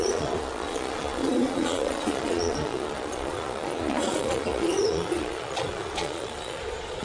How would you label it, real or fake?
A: fake